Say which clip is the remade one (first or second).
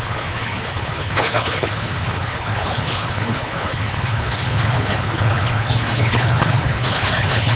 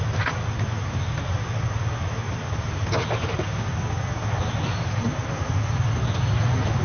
first